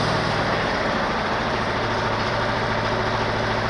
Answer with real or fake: fake